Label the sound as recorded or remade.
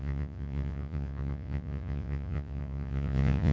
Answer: remade